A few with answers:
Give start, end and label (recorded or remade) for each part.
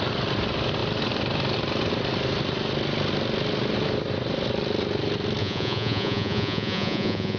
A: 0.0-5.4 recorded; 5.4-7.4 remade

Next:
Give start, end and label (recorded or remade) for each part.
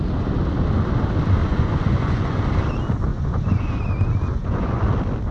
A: 0.0-1.4 recorded; 1.4-2.4 remade; 2.4-3.1 recorded; 3.1-3.7 remade; 3.7-4.3 recorded; 4.3-4.8 remade; 4.8-5.3 recorded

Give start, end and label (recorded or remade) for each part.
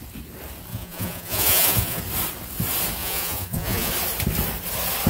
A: 0.0-0.7 recorded; 0.7-2.0 remade; 2.0-3.0 recorded; 3.0-3.9 remade; 3.9-5.1 recorded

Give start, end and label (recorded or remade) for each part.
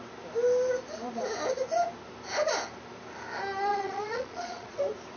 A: 0.0-3.7 recorded; 3.7-4.8 remade; 4.8-5.2 recorded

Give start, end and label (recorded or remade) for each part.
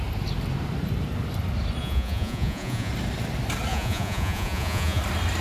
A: 0.0-1.8 recorded; 1.8-2.9 remade; 2.9-3.7 recorded; 3.7-5.0 remade; 5.0-5.4 recorded